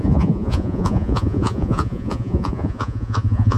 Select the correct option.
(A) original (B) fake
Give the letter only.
B